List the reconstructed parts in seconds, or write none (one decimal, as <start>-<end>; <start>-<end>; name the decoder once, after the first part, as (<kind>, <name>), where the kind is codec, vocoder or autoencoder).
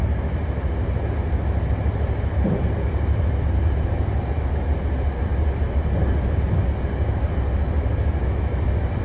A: none